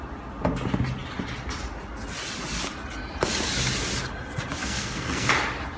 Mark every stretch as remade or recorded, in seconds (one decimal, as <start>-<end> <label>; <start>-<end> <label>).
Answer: 0.0-4.6 recorded; 4.6-5.3 remade; 5.3-5.8 recorded